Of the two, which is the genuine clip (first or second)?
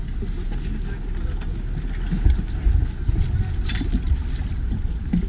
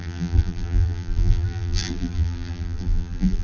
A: first